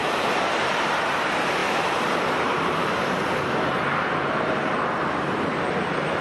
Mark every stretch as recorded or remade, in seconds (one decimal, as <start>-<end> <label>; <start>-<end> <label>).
0.0-6.2 remade